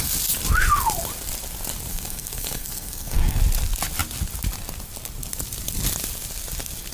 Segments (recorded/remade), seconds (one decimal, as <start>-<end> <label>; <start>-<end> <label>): 0.0-1.9 recorded; 1.9-3.4 remade; 3.4-6.9 recorded